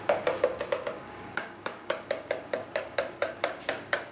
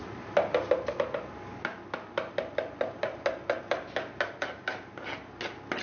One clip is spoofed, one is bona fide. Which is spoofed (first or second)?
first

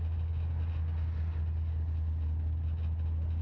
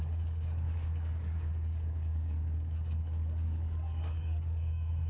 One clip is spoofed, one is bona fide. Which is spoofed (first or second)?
second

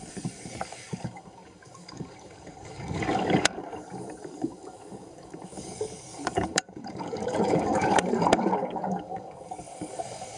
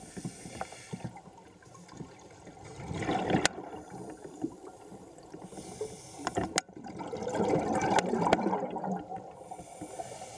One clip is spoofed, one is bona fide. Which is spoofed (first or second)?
first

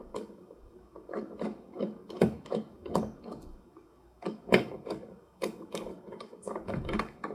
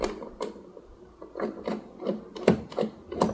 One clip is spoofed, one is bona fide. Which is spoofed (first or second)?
first